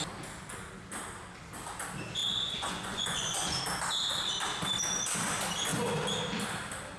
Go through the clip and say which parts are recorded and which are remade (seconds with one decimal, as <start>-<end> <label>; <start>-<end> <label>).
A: 0.0-2.2 recorded; 2.2-3.6 remade; 3.6-7.0 recorded